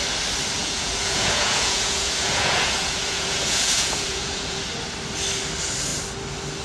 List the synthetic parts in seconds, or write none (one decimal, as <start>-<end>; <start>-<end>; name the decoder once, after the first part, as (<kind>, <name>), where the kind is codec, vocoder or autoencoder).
0.6-4.6 (vocoder, Vocos)